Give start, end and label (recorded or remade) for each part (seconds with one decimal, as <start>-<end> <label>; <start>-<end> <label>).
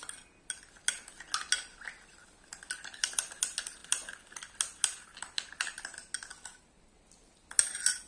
0.0-8.1 recorded